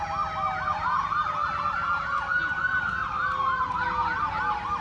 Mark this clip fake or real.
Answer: real